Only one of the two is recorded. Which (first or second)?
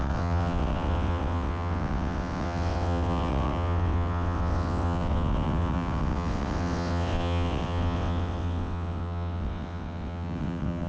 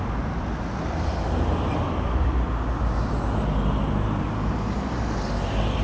second